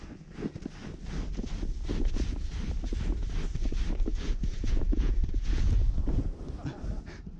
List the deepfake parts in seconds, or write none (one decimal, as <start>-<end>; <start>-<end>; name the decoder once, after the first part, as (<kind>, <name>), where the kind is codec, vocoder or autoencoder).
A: 4.1-6.2 (vocoder, Vocos)